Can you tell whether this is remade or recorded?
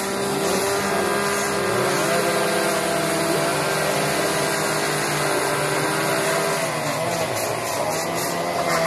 recorded